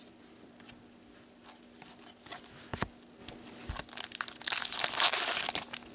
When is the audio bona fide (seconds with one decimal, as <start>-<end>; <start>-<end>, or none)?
0.0-5.9